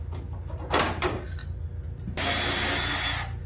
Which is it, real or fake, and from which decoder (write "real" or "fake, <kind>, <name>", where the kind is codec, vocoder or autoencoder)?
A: real